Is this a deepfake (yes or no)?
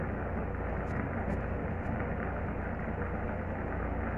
no